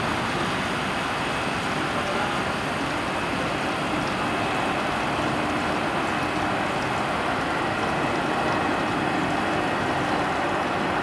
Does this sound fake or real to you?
real